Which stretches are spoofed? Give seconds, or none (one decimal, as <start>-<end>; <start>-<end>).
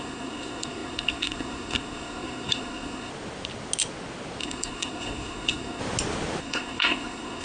0.0-3.1; 4.4-5.8; 6.4-7.4